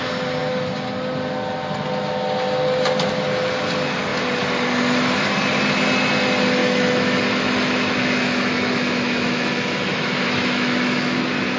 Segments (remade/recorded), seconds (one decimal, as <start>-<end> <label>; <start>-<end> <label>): 0.0-6.6 recorded; 6.6-11.2 remade; 11.2-11.6 recorded